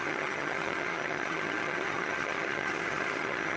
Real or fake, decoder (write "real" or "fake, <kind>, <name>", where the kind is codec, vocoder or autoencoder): fake, vocoder, HiFi-GAN